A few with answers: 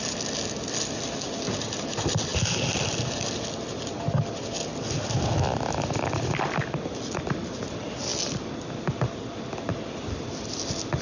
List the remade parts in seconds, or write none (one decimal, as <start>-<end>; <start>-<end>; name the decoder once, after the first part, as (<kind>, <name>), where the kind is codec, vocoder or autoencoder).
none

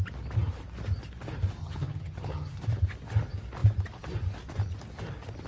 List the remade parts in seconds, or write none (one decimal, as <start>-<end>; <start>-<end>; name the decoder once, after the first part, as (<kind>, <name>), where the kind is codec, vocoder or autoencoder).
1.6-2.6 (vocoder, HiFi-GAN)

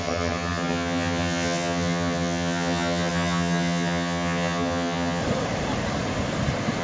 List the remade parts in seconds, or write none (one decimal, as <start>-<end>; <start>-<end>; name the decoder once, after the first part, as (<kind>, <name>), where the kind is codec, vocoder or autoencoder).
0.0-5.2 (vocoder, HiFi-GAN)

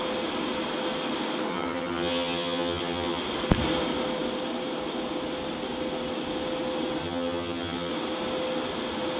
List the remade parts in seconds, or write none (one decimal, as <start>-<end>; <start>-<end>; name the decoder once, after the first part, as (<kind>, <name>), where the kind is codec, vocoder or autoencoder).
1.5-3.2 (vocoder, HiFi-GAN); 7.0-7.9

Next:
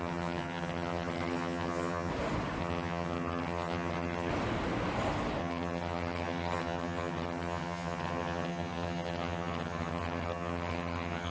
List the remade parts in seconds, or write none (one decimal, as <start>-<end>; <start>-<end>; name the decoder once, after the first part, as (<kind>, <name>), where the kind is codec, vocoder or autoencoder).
0.0-2.1 (vocoder, HiFi-GAN); 2.6-4.3; 5.4-11.3

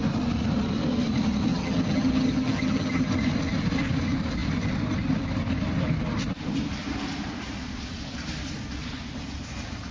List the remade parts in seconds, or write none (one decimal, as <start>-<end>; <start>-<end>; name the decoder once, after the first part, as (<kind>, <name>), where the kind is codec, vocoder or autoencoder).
1.5-3.1 (vocoder, HiFi-GAN)

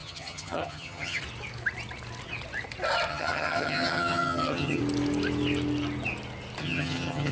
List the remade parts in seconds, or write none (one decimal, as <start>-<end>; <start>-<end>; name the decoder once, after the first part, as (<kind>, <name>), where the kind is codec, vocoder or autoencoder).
0.0-1.2 (vocoder, HiFi-GAN); 3.1-4.8; 6.6-7.3